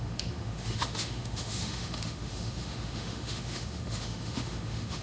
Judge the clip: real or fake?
fake